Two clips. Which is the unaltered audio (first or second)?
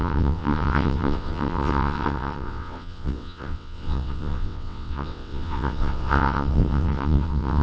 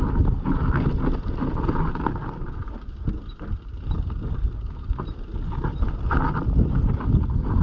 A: second